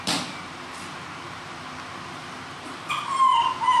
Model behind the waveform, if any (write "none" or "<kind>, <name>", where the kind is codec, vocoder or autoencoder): none